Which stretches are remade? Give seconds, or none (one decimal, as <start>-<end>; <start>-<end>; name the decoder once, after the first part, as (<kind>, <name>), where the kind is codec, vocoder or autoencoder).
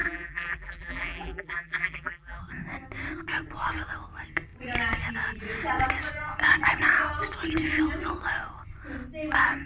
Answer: 0.0-2.4 (vocoder, BigVGAN v2)